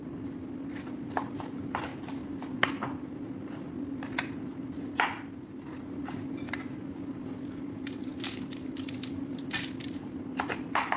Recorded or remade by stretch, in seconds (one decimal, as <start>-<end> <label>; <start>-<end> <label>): 0.0-11.0 recorded